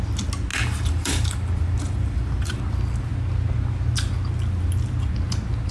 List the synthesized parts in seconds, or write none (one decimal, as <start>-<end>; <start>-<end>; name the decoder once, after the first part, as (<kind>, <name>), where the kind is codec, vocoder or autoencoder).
0.5-2.6 (vocoder, BigVGAN v2)